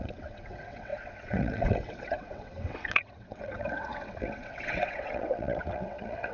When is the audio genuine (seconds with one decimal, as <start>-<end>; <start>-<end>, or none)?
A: none